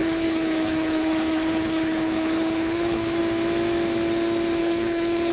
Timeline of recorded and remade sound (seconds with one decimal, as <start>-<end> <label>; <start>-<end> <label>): 0.0-3.2 remade; 3.2-4.6 recorded; 4.6-5.3 remade